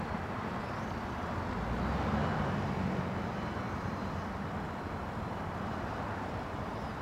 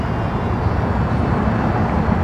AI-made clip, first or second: first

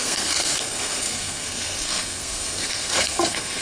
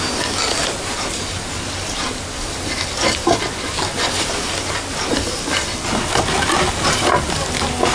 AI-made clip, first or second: first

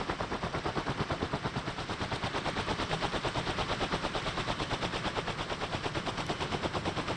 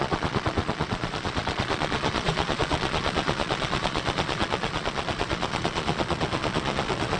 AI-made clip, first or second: second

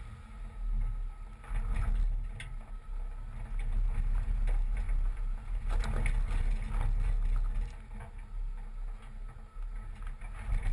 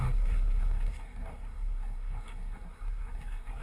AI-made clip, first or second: second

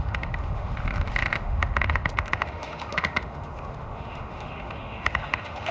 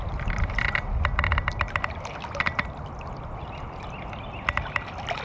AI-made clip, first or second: first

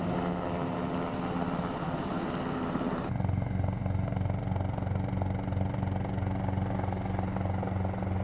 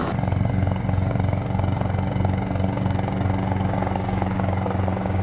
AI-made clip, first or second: second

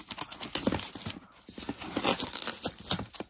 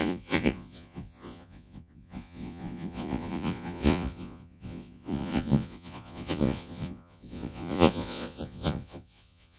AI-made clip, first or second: second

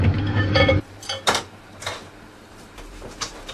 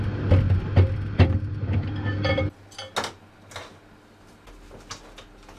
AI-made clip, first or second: first